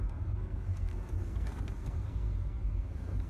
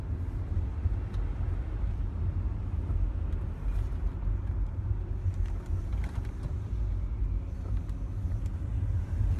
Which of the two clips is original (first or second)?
second